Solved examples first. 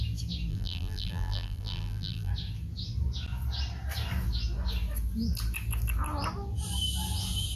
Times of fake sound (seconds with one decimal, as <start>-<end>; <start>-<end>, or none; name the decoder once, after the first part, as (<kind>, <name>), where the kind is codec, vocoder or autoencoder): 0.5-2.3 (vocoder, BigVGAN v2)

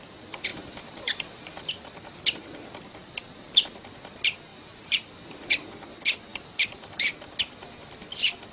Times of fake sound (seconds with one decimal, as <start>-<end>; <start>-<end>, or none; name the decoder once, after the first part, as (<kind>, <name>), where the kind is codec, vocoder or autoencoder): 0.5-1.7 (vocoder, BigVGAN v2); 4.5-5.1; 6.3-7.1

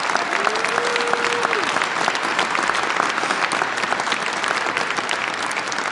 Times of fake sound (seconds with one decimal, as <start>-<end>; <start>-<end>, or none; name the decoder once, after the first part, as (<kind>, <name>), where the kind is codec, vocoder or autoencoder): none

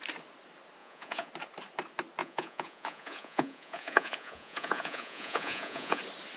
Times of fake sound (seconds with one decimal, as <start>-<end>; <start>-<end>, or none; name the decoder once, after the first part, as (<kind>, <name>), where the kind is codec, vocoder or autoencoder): 0.8-1.3 (vocoder, Vocos); 2.2-6.0

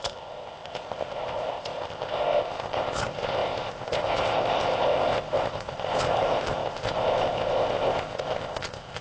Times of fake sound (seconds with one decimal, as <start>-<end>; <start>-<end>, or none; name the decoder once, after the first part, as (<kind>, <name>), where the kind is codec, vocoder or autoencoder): 0.0-9.0 (codec, ZipCodec)

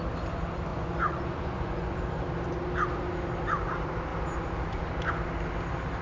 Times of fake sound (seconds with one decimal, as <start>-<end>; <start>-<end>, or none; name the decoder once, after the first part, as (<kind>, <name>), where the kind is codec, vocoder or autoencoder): 0.7-2.0 (vocoder, Vocos)